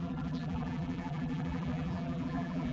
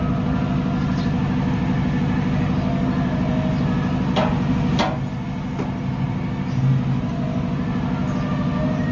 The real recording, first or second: second